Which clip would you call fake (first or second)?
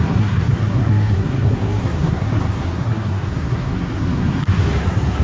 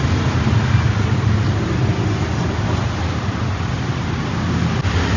first